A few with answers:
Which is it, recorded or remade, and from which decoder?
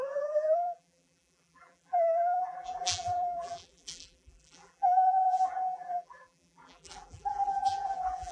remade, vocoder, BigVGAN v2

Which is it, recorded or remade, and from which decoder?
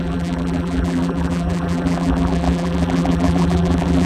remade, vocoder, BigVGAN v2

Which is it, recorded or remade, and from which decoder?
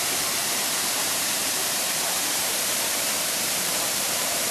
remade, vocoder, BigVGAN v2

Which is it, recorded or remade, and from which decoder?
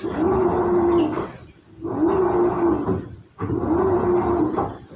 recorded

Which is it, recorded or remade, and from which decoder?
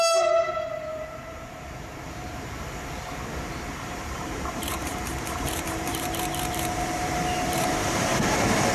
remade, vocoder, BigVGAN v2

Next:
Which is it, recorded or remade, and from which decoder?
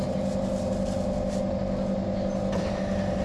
recorded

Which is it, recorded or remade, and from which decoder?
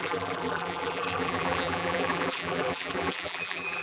remade, vocoder, BigVGAN v2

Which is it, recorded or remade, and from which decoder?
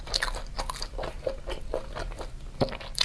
recorded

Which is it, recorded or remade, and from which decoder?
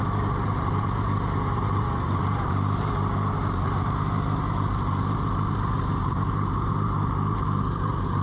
remade, vocoder, BigVGAN v2